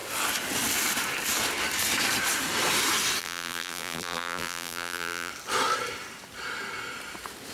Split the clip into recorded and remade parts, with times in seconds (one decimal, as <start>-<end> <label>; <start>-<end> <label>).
0.0-3.2 recorded; 3.2-5.3 remade; 5.3-7.5 recorded

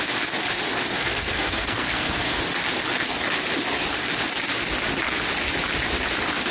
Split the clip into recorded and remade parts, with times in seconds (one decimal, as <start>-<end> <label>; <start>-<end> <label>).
0.0-0.9 recorded; 0.9-2.4 remade; 2.4-6.5 recorded

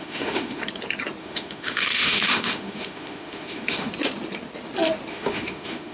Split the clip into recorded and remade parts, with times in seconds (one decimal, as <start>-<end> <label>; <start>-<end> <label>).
0.0-0.6 remade; 0.6-1.2 recorded; 1.2-3.9 remade; 3.9-5.1 recorded; 5.1-5.9 remade

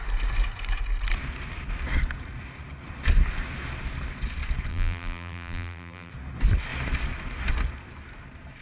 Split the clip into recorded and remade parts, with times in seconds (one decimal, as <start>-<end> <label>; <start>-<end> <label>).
0.0-4.7 recorded; 4.7-6.1 remade; 6.1-8.6 recorded

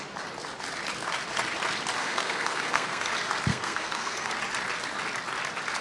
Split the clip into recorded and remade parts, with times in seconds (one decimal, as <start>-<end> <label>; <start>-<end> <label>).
0.0-2.0 recorded; 2.0-3.1 remade; 3.1-3.5 recorded; 3.5-4.3 remade; 4.3-5.8 recorded